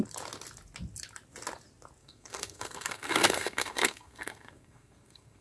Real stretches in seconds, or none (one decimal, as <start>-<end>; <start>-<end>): 0.0-2.0

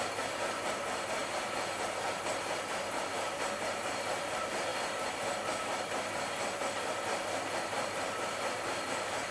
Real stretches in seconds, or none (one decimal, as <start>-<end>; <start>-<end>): 1.2-2.3; 4.7-7.6

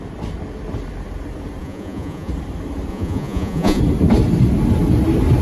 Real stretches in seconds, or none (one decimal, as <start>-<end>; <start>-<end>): 0.0-1.6; 2.3-2.9; 3.8-5.4

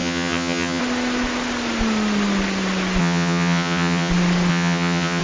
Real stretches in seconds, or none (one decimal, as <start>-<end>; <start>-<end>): 0.8-3.0; 4.1-4.5

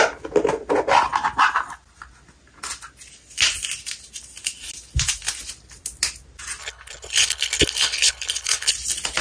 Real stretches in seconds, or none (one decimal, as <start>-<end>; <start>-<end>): 0.0-6.6; 8.7-9.2

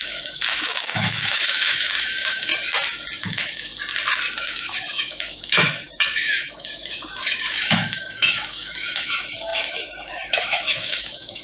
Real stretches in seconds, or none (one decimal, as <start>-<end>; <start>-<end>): 2.5-3.2; 3.7-4.4

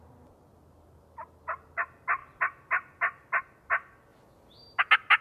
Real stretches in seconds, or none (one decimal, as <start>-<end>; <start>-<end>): 0.0-5.2

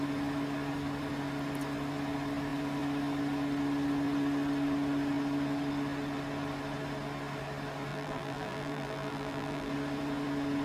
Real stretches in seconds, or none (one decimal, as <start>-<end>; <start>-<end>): 0.0-7.9; 9.7-10.6